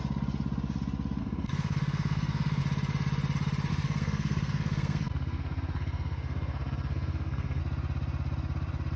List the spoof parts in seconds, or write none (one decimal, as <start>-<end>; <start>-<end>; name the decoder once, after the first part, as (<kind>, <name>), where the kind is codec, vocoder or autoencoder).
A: 1.2-2.6 (codec, SNAC); 3.7-7.6